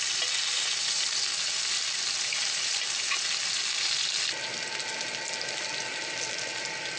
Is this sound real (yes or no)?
yes